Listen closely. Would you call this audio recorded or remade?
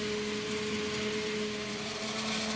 recorded